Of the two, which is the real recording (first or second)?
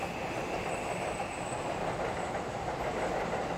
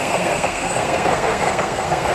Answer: first